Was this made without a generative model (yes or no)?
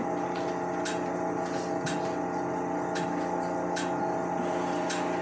yes